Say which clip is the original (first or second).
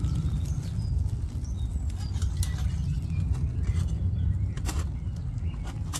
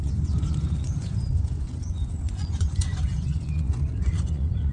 first